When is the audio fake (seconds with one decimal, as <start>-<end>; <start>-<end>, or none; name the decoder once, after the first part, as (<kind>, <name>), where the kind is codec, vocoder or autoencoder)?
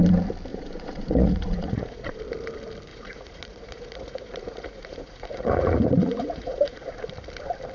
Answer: 0.5-2.2 (vocoder, Vocos); 2.9-7.1